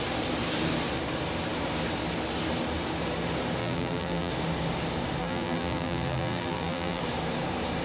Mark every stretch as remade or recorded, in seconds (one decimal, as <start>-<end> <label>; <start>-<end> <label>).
0.0-3.6 recorded; 3.6-4.3 remade; 4.3-5.2 recorded; 5.2-7.0 remade; 7.0-7.8 recorded